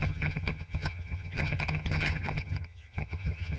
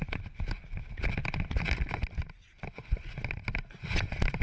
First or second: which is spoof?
first